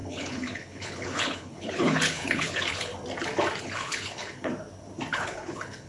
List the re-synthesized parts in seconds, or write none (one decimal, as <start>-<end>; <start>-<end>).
0.0-2.9; 3.6-4.5; 5.1-5.9